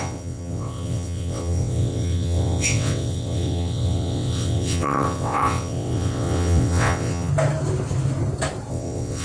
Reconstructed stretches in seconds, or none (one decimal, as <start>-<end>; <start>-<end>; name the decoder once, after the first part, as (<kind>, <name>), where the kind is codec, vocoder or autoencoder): 0.0-7.3 (vocoder, WaveNeXt); 8.7-9.2